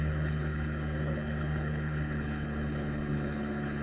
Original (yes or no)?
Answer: no